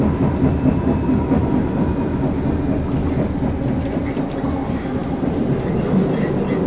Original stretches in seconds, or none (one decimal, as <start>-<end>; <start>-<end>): 0.0-6.7